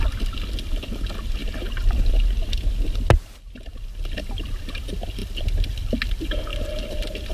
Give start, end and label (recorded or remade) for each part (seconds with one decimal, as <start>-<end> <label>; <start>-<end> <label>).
0.0-7.3 recorded